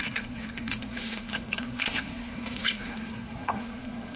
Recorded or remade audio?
remade